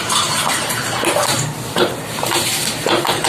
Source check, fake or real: fake